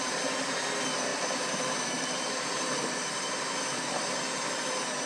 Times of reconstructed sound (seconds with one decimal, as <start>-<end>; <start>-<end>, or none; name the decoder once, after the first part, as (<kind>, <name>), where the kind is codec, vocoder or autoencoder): 1.1-4.2 (vocoder, BigVGAN v2)